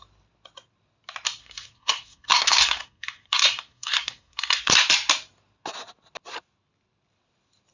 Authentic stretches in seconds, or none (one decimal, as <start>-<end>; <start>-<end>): 0.0-1.4; 4.7-7.7

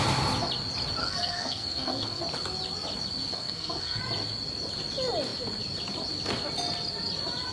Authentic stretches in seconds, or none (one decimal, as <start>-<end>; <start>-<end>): 0.0-1.0; 2.2-3.3; 4.0-7.5

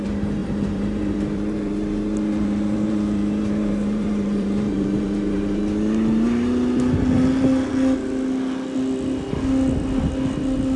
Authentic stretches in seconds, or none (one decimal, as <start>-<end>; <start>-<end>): 0.0-0.4; 5.6-10.8

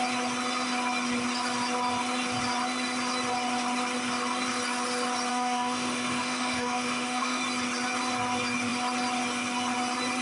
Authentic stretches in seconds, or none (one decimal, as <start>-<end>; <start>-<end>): 0.0-5.3; 7.4-10.2